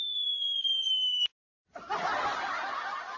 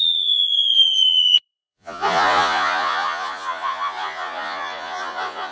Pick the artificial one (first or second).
second